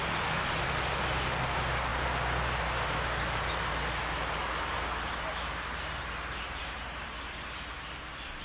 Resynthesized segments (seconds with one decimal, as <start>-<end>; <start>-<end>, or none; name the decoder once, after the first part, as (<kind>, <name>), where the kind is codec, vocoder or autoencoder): none